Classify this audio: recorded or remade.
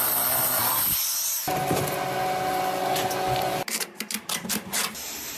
recorded